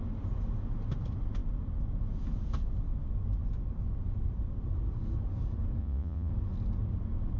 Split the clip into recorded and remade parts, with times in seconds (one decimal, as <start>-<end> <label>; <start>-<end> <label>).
0.0-5.8 recorded; 5.8-6.3 remade; 6.3-7.4 recorded